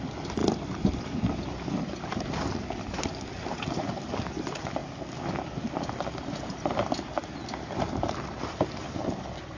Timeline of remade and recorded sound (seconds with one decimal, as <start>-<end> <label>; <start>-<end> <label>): 0.0-4.8 remade; 4.8-5.9 recorded; 5.9-9.6 remade